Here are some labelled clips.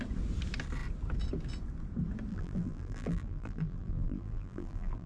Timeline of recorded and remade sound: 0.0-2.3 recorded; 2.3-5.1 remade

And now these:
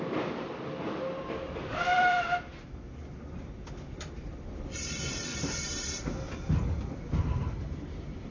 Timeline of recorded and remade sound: 0.0-5.3 remade; 5.3-6.8 recorded; 6.8-8.3 remade

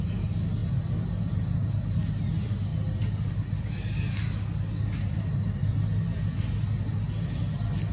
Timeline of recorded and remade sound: 0.0-7.9 recorded

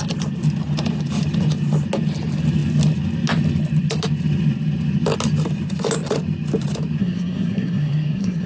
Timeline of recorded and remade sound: 0.0-7.0 recorded; 7.0-8.5 remade